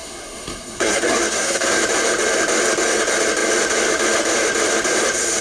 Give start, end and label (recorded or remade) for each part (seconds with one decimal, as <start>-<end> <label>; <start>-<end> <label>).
0.0-1.8 remade; 1.8-5.4 recorded